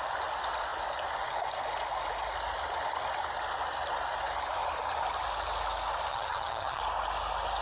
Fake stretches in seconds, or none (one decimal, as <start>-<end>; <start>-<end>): 6.1-6.8